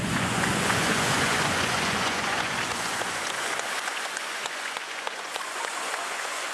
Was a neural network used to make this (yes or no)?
yes